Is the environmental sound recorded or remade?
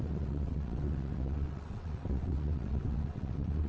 remade